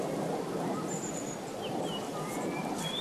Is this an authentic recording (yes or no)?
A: no